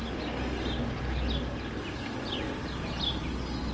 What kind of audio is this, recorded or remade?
recorded